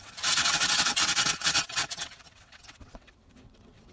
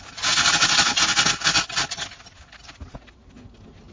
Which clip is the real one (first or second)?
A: second